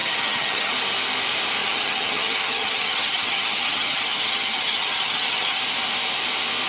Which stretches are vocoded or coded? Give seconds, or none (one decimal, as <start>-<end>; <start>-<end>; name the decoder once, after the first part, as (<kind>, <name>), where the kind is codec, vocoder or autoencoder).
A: 0.0-0.7 (vocoder, HiFi-GAN); 1.6-5.6